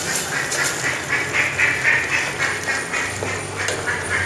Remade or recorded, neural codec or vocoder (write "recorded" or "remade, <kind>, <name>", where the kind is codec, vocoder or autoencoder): recorded